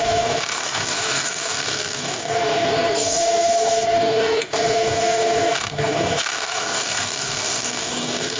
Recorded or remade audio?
remade